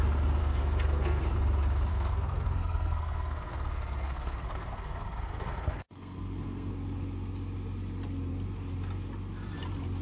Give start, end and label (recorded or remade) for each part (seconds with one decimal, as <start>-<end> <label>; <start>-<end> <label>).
0.0-0.4 recorded; 0.4-1.2 remade; 1.2-1.9 recorded; 1.9-6.7 remade; 6.7-10.0 recorded